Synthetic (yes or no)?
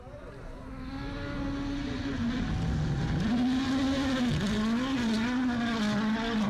no